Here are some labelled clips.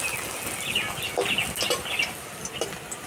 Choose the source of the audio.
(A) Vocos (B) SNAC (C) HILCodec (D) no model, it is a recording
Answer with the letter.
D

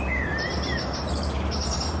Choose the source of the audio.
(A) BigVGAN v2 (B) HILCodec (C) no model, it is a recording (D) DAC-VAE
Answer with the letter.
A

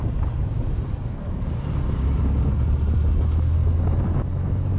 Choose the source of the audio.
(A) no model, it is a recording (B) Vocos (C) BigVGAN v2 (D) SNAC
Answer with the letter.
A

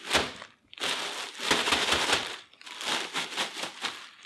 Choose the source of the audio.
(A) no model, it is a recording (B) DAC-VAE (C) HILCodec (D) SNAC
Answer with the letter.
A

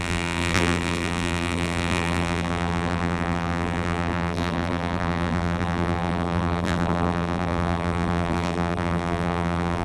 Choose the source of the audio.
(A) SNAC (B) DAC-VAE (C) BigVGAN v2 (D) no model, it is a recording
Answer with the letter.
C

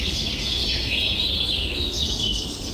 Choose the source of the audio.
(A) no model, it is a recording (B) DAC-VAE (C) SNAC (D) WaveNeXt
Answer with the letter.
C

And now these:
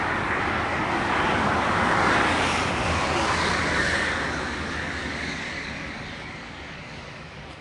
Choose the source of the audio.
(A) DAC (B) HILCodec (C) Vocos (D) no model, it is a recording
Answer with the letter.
A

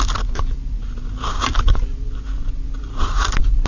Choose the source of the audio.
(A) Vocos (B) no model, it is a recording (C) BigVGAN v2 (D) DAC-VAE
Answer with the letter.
B